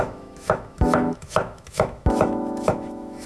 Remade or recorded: remade